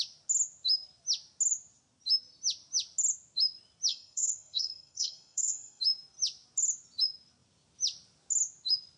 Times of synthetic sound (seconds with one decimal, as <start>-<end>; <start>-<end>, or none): 3.9-5.8